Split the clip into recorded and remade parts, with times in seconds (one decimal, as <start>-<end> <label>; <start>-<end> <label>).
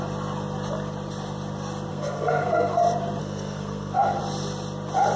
0.0-1.9 recorded; 1.9-2.8 remade; 2.8-3.2 recorded; 3.2-4.2 remade; 4.2-5.2 recorded